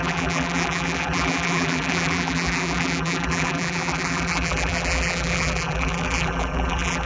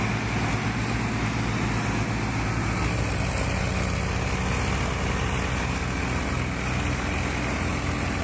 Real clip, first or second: second